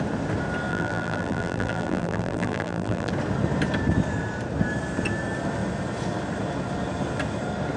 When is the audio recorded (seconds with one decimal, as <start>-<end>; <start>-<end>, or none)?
0.0-0.7; 3.1-7.8